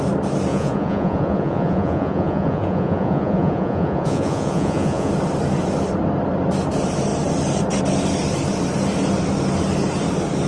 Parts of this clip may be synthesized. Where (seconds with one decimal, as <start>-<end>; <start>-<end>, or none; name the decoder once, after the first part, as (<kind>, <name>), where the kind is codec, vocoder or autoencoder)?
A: 0.5-5.1 (vocoder, Vocos)